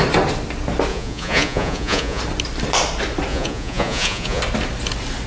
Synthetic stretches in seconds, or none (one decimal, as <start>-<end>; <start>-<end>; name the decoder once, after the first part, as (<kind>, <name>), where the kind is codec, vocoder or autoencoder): 0.9-2.2 (vocoder, Vocos); 3.3-4.4